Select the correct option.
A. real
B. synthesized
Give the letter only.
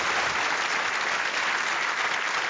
A